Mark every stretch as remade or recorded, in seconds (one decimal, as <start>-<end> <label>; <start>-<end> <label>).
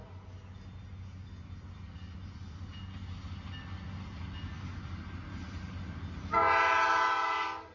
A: 0.0-7.7 recorded